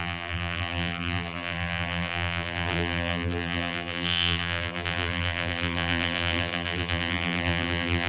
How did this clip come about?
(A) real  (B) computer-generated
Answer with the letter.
B